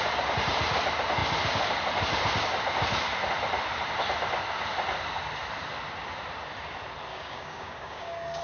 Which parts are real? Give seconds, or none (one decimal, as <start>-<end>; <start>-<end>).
0.0-7.1